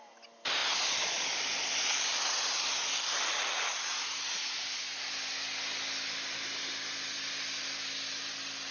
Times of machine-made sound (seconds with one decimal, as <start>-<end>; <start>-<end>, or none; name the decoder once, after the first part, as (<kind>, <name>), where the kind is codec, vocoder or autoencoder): none

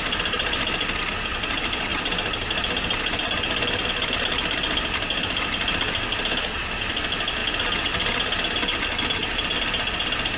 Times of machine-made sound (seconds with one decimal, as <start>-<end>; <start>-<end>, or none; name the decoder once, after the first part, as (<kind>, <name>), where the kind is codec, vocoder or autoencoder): none

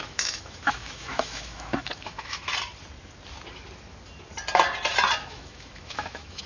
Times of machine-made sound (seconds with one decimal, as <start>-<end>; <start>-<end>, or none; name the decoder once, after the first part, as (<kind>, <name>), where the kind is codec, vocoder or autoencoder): 0.0-2.5 (autoencoder, DAC-VAE); 5.2-6.5

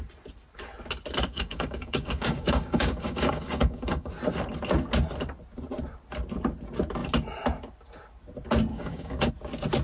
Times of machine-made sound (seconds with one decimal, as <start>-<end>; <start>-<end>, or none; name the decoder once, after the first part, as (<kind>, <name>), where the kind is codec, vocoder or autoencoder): 1.3-4.1 (codec, DAC); 8.7-9.3

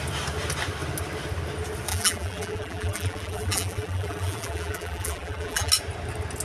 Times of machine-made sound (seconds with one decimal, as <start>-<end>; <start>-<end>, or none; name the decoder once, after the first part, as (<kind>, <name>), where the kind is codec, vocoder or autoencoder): 1.9-5.7 (vocoder, BigVGAN v2)